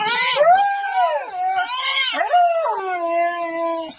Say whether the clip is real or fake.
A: real